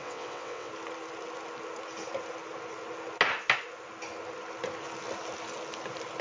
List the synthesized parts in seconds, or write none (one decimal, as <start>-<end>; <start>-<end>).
0.0-0.7